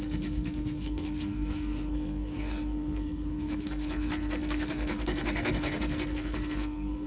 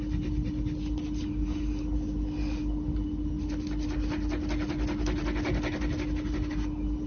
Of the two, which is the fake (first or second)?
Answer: first